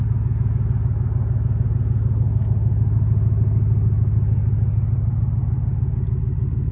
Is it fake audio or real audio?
real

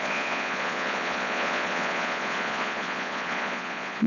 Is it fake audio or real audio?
fake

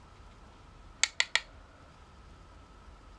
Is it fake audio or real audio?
real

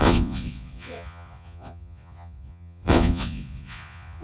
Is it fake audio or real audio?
fake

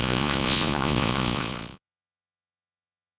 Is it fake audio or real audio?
fake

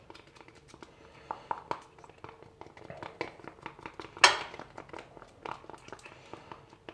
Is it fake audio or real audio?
real